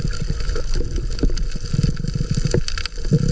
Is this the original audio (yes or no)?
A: yes